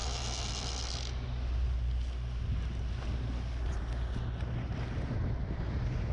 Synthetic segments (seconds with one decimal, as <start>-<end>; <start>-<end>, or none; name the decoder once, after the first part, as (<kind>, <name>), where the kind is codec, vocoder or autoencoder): none